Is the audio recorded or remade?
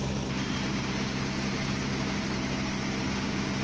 recorded